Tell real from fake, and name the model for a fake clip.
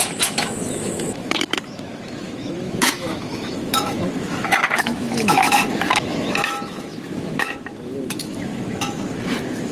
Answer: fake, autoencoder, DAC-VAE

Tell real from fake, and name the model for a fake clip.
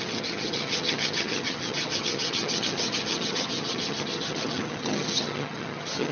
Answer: fake, vocoder, HiFi-GAN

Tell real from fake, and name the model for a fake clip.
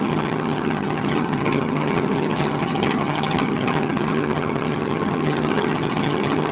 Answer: fake, vocoder, HiFi-GAN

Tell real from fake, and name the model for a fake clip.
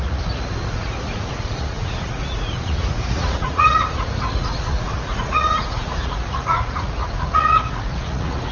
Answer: fake, vocoder, Vocos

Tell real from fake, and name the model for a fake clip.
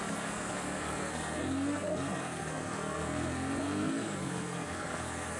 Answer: fake, codec, SNAC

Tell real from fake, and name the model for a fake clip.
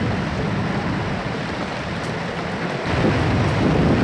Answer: real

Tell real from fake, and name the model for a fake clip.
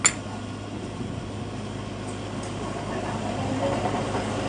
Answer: real